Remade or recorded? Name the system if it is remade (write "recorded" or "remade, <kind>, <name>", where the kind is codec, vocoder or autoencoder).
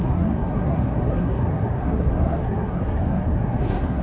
remade, codec, SNAC